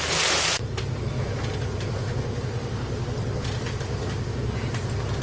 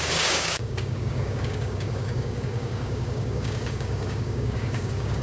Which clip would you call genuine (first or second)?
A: first